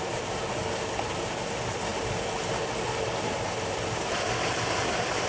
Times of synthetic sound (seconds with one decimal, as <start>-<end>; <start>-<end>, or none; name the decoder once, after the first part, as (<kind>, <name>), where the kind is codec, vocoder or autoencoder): none